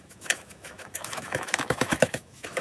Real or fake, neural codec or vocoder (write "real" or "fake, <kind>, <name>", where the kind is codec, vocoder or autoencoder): fake, autoencoder, DAC-VAE